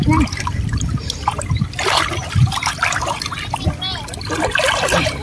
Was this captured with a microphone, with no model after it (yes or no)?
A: no